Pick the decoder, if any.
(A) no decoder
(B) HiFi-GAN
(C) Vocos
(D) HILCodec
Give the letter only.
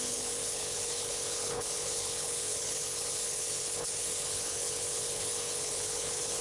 D